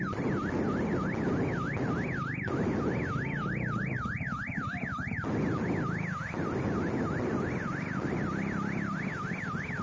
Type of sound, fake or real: real